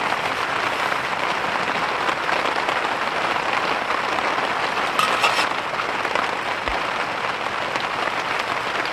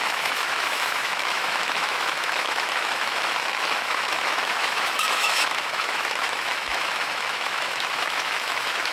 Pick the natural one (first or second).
first